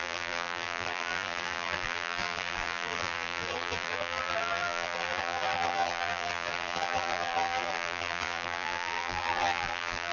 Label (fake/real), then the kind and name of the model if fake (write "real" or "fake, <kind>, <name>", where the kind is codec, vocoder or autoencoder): fake, vocoder, BigVGAN v2